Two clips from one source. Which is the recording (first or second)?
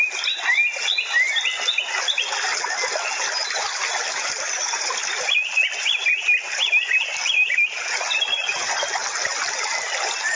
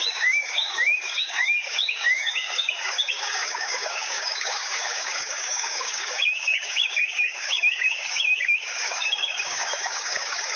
first